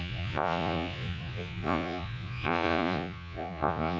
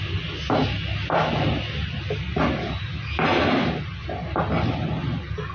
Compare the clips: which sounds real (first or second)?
second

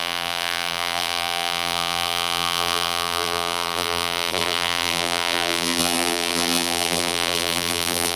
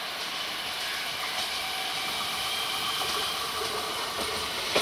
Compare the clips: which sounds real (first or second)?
second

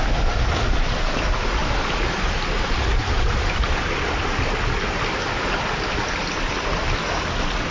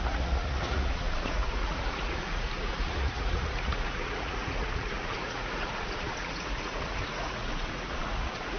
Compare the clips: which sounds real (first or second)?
first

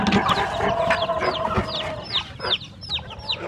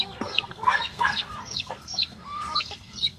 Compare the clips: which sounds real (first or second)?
first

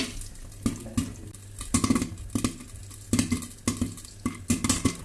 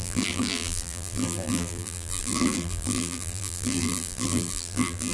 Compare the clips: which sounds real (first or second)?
first